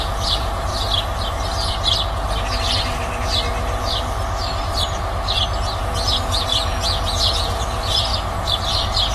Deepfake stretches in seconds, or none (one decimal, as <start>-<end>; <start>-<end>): 0.0-0.7; 5.8-8.1